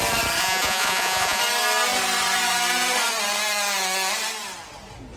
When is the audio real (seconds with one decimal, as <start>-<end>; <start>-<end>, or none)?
0.0-0.4; 1.4-5.2